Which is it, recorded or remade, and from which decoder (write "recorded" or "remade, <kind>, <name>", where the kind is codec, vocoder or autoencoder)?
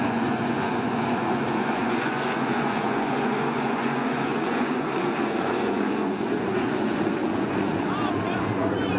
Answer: remade, vocoder, Vocos